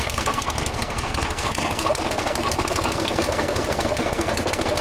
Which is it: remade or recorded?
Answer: remade